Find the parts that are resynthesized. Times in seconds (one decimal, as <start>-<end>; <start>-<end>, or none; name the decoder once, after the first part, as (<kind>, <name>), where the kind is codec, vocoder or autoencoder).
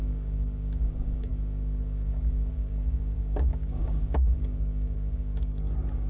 0.0-6.1 (codec, DAC)